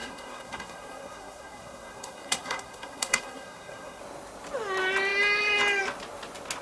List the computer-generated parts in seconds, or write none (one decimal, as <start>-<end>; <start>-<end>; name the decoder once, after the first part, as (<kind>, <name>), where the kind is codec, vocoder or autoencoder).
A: 0.0-4.0 (codec, SNAC)